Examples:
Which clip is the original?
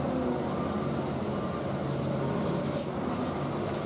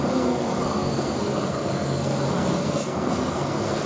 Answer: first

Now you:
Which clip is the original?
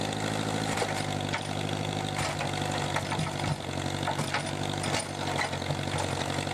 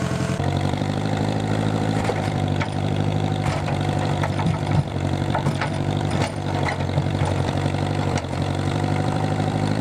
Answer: first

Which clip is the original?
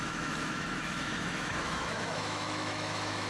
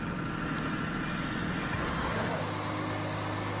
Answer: second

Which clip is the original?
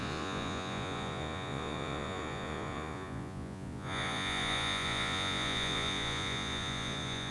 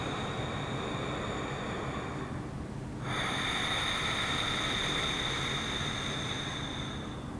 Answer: second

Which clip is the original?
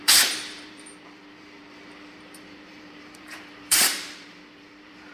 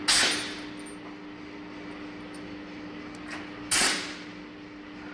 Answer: second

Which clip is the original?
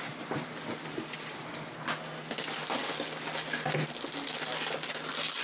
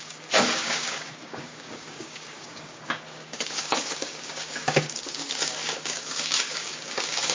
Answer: first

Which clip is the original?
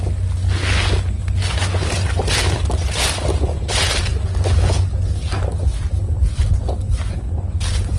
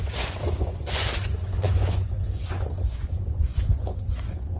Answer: first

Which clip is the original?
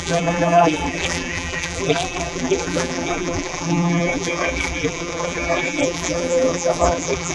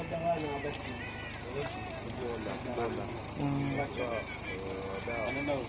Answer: second